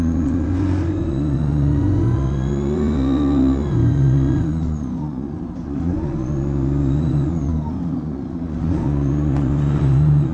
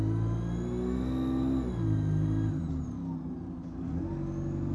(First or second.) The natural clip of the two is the second